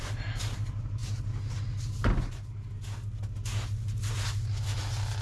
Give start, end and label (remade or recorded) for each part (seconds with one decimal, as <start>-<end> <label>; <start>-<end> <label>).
0.0-5.2 recorded